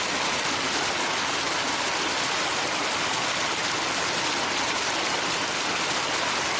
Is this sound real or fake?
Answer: real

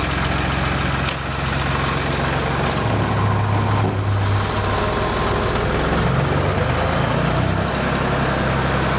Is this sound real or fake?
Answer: real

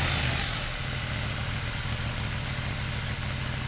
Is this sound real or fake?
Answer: real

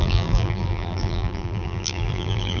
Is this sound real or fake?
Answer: fake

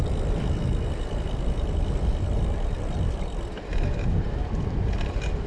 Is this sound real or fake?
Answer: fake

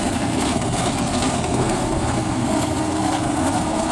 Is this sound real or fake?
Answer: fake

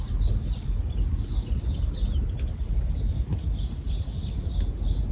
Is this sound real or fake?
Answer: real